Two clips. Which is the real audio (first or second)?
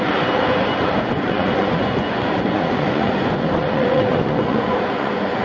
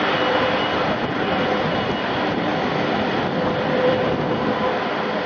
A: second